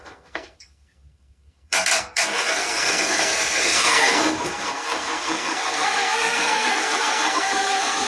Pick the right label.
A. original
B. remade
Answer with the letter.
B